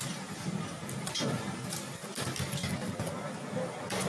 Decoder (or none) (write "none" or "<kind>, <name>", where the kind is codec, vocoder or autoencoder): none